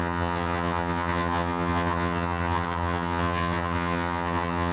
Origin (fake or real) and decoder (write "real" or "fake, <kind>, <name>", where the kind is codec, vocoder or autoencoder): fake, vocoder, HiFi-GAN